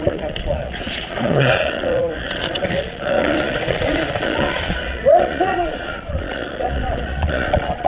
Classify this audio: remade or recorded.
remade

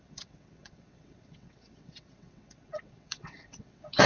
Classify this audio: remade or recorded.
remade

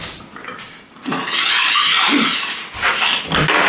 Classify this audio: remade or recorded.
recorded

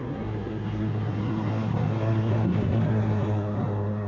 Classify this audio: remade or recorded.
remade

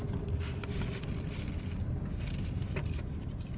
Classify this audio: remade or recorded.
recorded